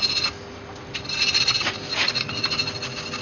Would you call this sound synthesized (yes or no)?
no